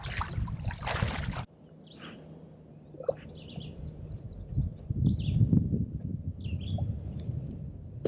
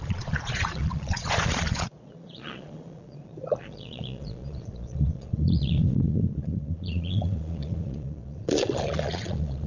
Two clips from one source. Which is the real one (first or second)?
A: first